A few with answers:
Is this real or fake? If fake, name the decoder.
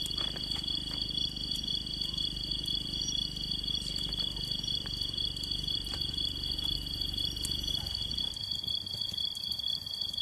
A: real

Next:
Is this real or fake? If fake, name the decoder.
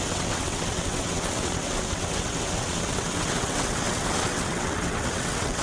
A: fake, vocoder, WaveNeXt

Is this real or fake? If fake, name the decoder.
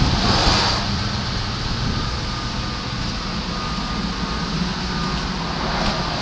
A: real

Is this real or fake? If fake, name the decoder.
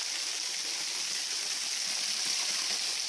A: real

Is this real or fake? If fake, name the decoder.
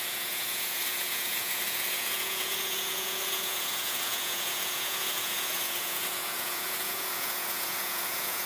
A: fake, vocoder, Vocos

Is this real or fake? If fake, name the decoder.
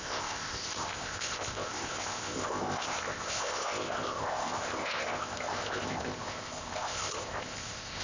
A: fake, codec, ZipCodec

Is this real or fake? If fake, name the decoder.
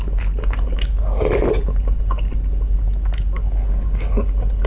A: real